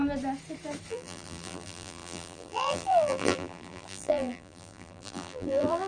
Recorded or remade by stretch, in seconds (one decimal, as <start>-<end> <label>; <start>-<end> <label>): 0.0-0.9 recorded; 0.9-5.9 remade